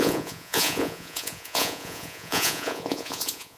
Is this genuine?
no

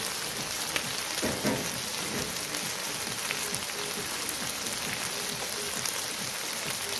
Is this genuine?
yes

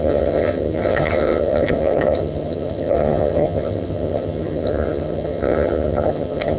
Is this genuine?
no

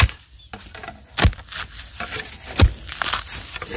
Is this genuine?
yes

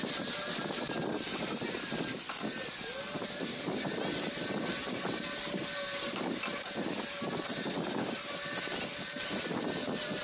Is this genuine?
yes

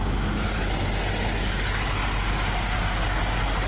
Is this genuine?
yes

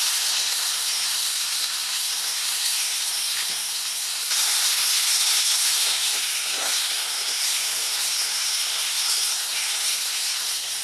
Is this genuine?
no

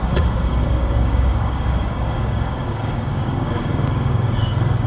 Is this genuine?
no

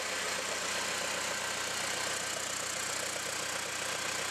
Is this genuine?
yes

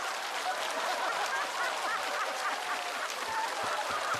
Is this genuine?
yes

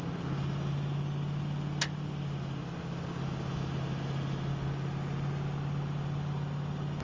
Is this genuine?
yes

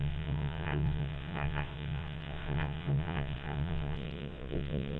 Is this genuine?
no